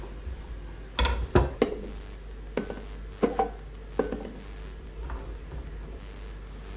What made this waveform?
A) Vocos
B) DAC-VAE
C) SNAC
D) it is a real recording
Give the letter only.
D